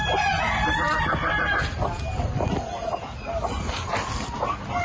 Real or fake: real